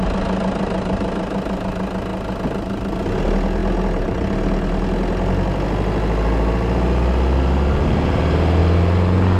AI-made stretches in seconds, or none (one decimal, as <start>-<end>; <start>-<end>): none